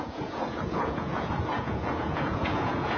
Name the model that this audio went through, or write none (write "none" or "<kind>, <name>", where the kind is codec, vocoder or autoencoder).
vocoder, Vocos